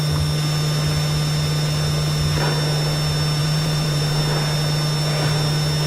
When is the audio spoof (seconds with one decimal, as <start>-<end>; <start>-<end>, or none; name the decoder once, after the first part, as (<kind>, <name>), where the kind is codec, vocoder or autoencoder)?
3.4-4.2 (vocoder, BigVGAN v2)